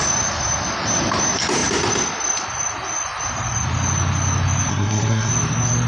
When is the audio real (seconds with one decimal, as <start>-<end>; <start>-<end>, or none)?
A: 0.0-4.7; 5.3-5.9